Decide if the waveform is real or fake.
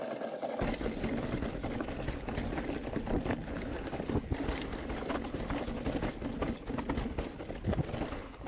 real